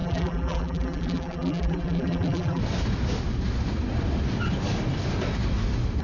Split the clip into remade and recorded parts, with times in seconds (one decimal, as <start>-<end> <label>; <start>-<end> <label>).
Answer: 0.0-2.6 remade; 2.6-6.0 recorded